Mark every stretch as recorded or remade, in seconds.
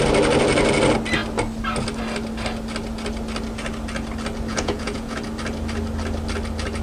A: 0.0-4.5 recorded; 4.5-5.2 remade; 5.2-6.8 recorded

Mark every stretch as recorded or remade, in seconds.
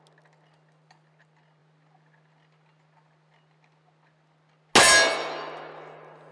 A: 0.0-6.3 recorded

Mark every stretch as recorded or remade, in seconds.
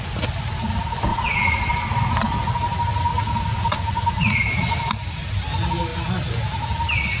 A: 0.0-1.1 recorded; 1.1-1.6 remade; 1.6-3.1 recorded; 3.1-4.6 remade; 4.6-7.2 recorded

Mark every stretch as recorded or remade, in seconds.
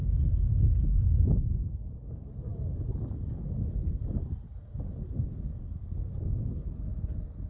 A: 0.0-7.5 recorded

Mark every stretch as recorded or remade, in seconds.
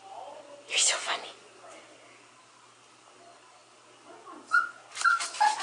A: 0.0-0.8 recorded; 0.8-1.5 remade; 1.5-5.6 recorded